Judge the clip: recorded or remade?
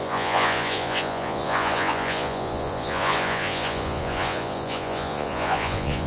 remade